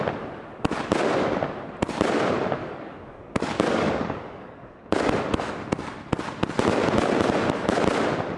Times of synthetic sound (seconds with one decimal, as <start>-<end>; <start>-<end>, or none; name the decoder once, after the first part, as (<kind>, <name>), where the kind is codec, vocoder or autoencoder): 2.6-5.2 (codec, DAC)